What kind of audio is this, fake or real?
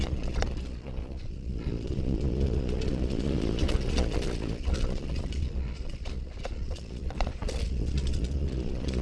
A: fake